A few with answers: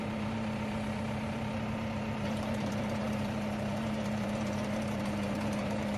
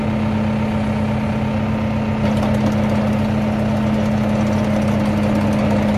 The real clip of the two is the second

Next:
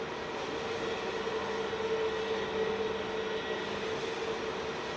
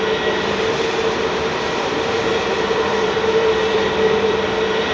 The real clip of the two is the first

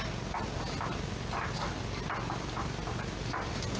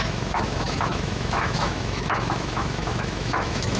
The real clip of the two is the first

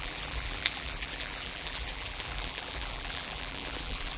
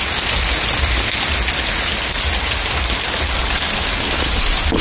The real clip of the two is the second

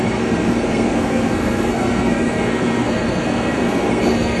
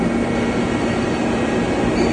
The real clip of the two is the second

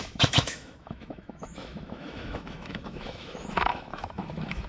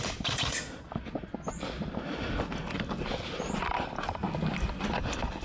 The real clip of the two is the second